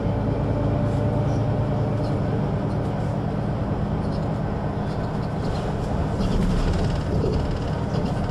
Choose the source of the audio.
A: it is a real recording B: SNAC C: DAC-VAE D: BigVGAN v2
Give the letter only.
A